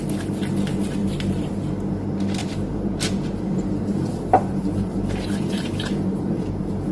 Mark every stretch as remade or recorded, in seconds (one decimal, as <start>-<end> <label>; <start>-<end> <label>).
0.0-1.0 recorded; 1.0-1.5 remade; 1.5-2.4 recorded; 2.4-6.5 remade; 6.5-6.9 recorded